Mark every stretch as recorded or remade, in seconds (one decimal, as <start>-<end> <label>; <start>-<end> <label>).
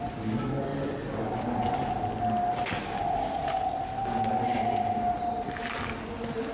0.0-6.5 recorded